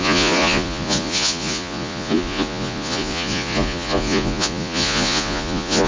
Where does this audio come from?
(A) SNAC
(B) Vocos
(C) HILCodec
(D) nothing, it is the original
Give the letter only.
B